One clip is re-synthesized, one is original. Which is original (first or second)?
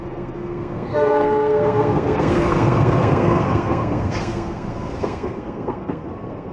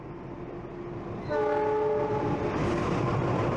second